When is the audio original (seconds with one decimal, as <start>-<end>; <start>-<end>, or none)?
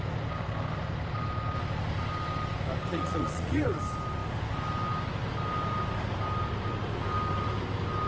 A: 0.0-2.9; 3.8-8.1